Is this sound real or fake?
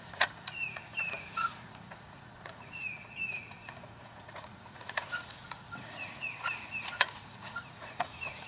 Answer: fake